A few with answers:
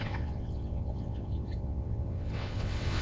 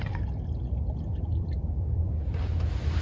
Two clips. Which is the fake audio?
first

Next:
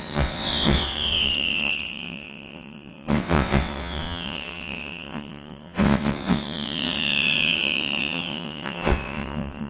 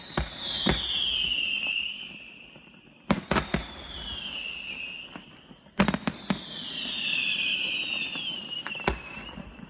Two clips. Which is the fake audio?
first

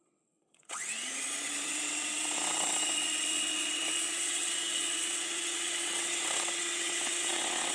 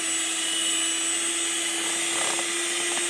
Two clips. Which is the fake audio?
first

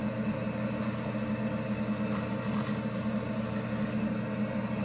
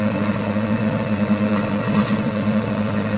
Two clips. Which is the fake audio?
second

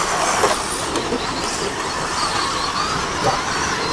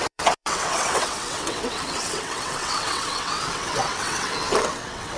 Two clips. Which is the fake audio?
second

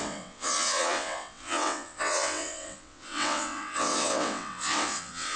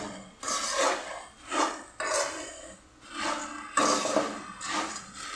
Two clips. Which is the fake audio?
first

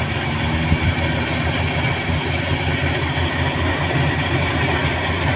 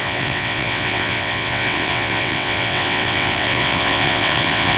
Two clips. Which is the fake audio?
second